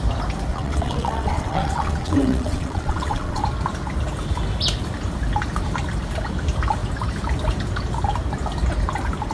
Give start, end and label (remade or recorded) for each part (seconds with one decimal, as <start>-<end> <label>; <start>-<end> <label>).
0.0-0.5 recorded; 0.5-3.4 remade; 3.4-9.3 recorded